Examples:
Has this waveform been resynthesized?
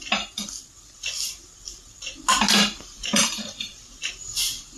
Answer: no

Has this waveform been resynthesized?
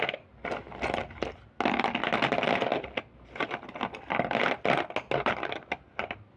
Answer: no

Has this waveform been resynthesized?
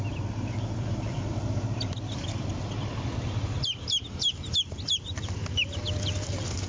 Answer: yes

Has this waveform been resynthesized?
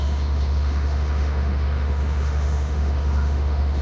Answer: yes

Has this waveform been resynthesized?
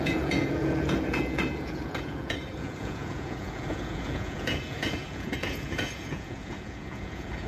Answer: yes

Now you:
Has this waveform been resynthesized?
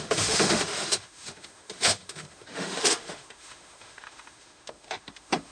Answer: yes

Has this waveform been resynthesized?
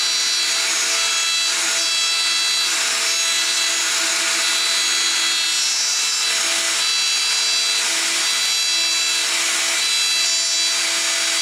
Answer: no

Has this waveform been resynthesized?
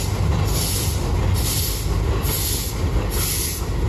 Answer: no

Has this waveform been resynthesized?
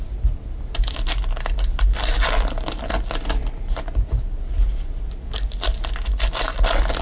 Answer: no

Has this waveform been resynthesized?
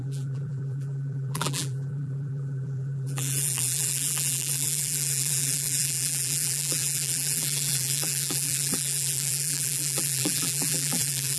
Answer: yes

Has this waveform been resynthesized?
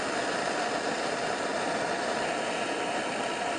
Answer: no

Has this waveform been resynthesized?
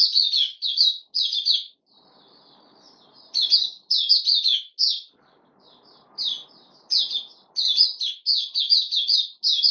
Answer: no